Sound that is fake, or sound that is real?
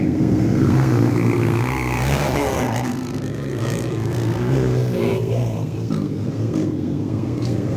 fake